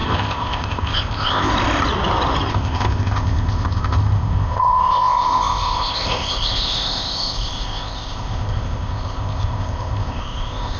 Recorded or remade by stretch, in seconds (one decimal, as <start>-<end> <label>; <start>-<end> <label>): 0.0-1.5 remade; 1.5-2.5 recorded; 2.5-10.8 remade